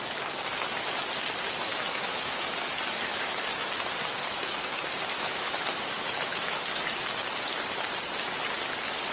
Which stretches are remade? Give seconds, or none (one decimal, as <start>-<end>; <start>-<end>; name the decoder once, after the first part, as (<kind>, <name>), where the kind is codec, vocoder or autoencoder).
1.7-2.5 (autoencoder, DAC-VAE); 3.1-3.7; 5.1-6.6